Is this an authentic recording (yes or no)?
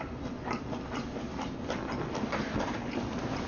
no